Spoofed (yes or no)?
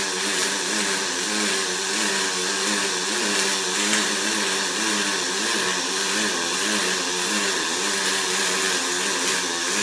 no